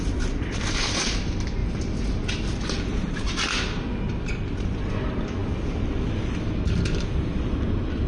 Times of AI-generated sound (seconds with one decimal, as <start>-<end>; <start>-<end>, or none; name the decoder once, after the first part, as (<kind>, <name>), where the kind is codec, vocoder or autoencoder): none